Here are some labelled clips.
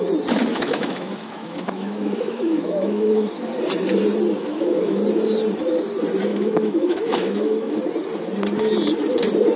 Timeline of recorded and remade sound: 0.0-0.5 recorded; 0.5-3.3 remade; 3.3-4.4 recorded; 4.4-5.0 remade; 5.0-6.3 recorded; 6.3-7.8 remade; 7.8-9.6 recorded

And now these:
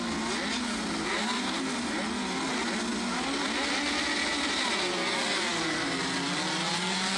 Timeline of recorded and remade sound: 0.0-7.2 recorded

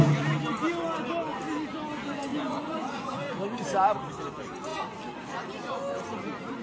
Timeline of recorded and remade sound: 0.0-2.3 recorded; 2.3-3.3 remade; 3.3-6.6 recorded

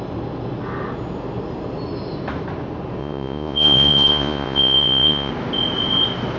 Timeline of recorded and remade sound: 0.0-3.0 recorded; 3.0-5.3 remade; 5.3-6.4 recorded

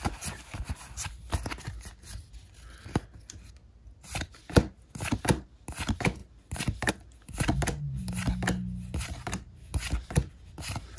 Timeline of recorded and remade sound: 0.0-6.2 recorded; 6.2-6.9 remade; 6.9-11.0 recorded

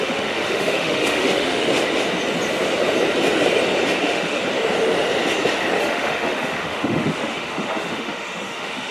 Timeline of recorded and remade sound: 0.0-1.7 remade; 1.7-4.0 recorded; 4.0-4.4 remade; 4.4-5.8 recorded; 5.8-8.9 remade

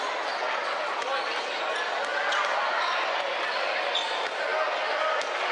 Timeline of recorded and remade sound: 0.0-5.5 recorded

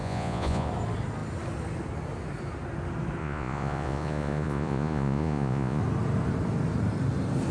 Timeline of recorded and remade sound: 0.0-0.7 remade; 0.7-3.2 recorded; 3.2-5.8 remade; 5.8-7.5 recorded